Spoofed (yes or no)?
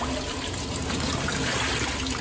no